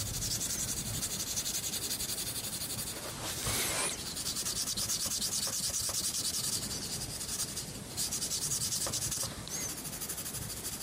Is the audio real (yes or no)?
yes